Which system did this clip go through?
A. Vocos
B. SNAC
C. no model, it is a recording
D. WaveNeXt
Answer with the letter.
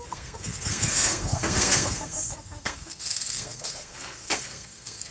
B